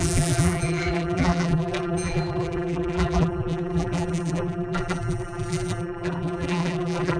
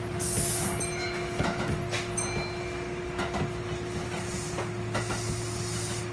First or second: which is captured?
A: second